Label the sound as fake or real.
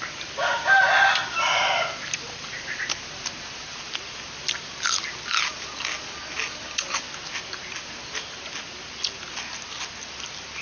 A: real